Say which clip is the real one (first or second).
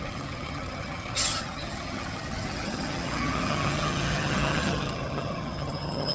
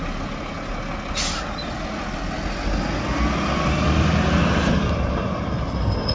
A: second